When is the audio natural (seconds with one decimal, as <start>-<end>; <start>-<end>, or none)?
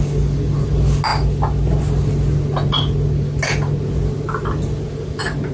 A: 0.0-5.5